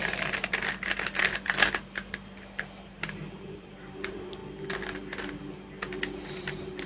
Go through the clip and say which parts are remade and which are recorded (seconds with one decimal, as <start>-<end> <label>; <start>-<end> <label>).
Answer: 0.0-2.8 recorded; 2.8-4.4 remade; 4.4-6.3 recorded; 6.3-6.9 remade